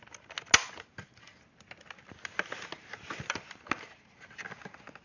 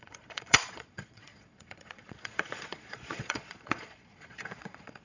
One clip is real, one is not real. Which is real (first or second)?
first